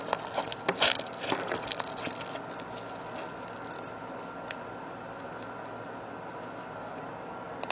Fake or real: real